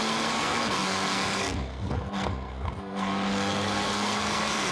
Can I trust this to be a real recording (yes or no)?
no